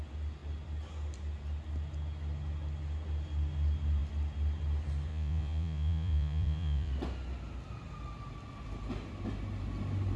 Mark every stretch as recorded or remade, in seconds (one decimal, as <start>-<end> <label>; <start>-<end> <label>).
0.0-5.1 recorded; 5.1-6.9 remade; 6.9-10.2 recorded